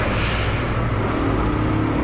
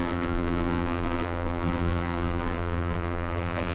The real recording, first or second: first